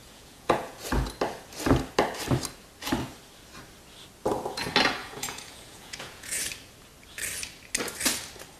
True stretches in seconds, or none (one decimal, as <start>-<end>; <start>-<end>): 0.8-5.0; 6.5-8.6